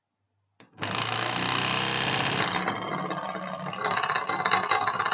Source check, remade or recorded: recorded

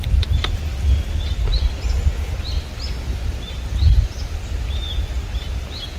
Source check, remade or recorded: recorded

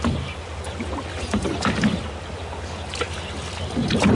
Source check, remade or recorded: recorded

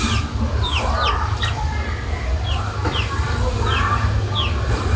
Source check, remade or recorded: recorded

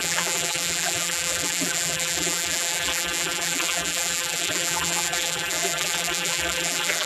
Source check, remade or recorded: remade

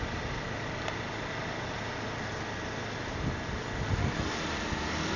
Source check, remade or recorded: recorded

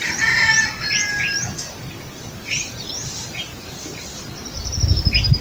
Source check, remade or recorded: recorded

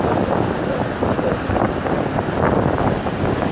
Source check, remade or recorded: recorded